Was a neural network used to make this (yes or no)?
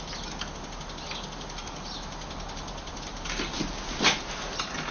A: no